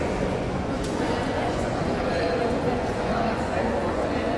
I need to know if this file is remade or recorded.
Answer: remade